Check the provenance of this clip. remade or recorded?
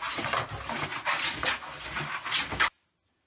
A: recorded